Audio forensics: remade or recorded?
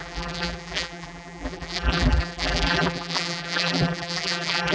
remade